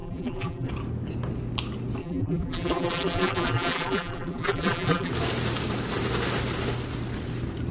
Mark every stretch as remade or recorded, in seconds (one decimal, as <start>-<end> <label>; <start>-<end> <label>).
0.0-0.7 remade; 0.7-2.0 recorded; 2.0-5.1 remade; 5.1-7.7 recorded